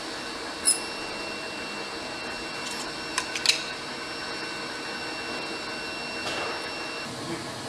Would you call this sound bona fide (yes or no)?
yes